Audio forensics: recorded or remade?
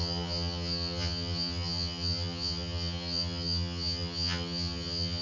remade